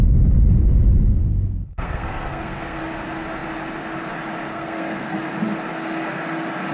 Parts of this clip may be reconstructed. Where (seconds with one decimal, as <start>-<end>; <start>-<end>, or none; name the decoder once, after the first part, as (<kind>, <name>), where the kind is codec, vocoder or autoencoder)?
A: 1.2-2.8 (codec, SNAC); 4.5-5.2